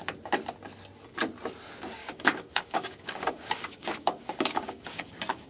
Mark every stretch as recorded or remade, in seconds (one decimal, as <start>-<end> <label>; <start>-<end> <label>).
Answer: 0.0-2.0 recorded; 2.0-5.5 remade